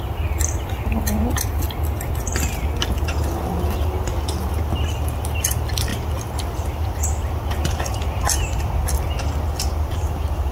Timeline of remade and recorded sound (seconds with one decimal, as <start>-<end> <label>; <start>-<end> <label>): 0.0-10.5 recorded